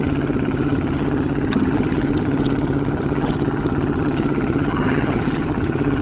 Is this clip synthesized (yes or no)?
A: yes